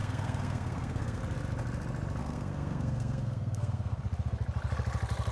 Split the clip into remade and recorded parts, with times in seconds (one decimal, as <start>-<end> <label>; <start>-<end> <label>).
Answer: 0.0-1.2 remade; 1.2-2.2 recorded; 2.2-4.0 remade; 4.0-5.3 recorded